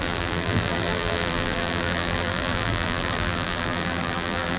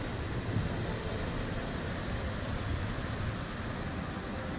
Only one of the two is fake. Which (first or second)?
first